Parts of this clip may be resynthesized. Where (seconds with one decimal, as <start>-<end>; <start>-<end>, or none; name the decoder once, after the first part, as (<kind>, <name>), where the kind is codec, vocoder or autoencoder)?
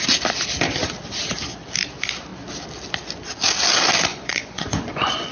4.1-5.3 (vocoder, Vocos)